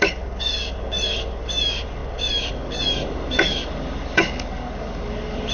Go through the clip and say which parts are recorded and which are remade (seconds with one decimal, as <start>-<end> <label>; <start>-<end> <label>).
0.0-5.5 remade